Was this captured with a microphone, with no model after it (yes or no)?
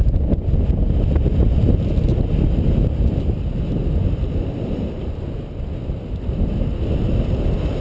yes